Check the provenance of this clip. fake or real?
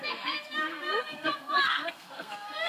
fake